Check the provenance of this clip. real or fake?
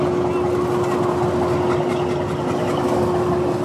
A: real